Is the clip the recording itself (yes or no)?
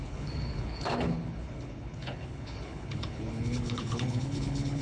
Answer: no